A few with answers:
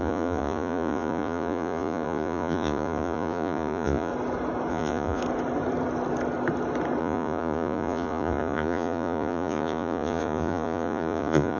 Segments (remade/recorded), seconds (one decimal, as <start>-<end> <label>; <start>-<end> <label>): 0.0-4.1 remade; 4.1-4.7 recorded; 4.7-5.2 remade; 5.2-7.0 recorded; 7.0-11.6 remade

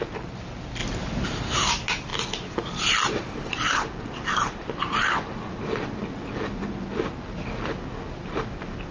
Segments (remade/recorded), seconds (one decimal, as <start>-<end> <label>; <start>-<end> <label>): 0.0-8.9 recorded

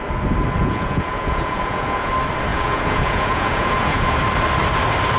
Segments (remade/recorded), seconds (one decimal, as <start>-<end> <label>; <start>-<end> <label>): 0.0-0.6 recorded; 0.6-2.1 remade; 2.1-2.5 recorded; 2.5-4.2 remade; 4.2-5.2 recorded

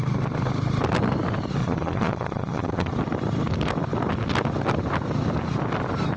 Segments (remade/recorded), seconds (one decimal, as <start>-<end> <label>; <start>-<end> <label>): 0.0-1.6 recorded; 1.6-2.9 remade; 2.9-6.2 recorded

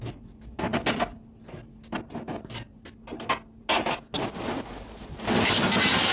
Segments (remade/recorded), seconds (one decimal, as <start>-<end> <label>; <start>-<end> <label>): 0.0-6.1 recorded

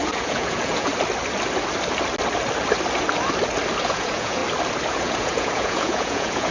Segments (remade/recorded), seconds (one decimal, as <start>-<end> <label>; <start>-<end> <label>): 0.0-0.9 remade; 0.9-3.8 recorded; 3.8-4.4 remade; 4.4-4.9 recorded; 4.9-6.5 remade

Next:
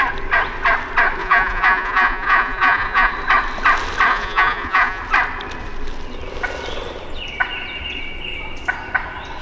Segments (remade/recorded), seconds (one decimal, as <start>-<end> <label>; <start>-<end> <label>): 0.0-1.2 recorded; 1.2-3.1 remade; 3.1-4.1 recorded; 4.1-5.0 remade; 5.0-9.4 recorded